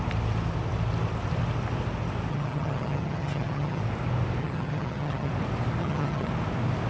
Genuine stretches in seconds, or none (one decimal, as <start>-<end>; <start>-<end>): 0.0-2.3; 3.8-4.4; 5.3-5.8; 6.3-6.9